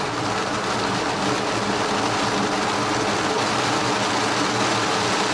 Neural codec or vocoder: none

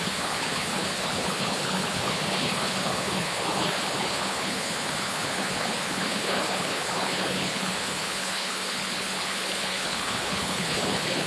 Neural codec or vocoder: codec, HILCodec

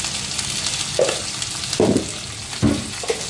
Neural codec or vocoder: none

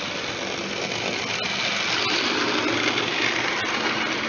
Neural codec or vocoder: none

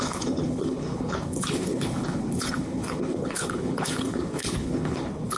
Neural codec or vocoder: codec, HILCodec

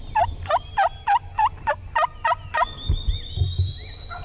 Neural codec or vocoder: none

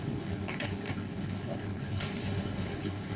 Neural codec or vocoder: codec, HILCodec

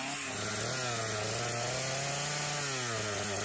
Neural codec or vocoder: none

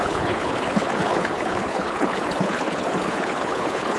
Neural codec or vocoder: codec, HILCodec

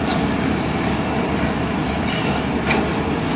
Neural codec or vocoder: none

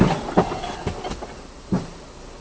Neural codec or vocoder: none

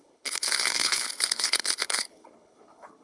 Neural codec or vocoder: codec, HILCodec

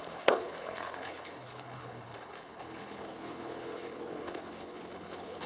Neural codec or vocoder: codec, HILCodec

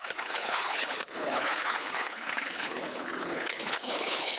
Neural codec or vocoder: codec, HILCodec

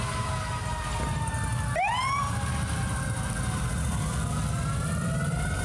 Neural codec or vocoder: none